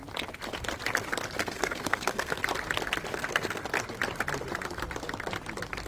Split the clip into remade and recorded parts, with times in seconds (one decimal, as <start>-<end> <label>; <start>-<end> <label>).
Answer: 0.0-1.4 recorded; 1.4-2.4 remade; 2.4-3.1 recorded; 3.1-3.6 remade; 3.6-5.9 recorded